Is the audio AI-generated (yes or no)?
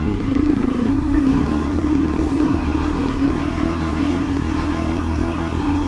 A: yes